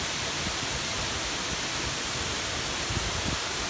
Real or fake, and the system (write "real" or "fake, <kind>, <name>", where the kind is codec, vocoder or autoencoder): fake, vocoder, BigVGAN v2